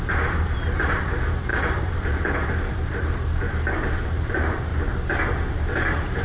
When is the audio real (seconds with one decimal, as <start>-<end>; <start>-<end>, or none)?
4.7-5.5